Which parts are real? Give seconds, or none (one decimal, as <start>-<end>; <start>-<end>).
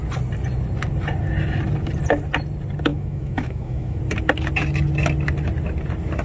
0.0-2.9; 4.0-6.2